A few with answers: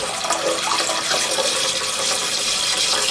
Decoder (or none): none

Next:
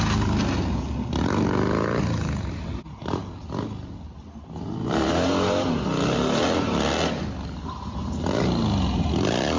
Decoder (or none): none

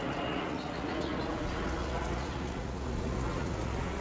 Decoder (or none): vocoder, Vocos